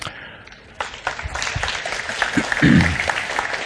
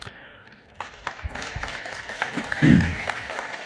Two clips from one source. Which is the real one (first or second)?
first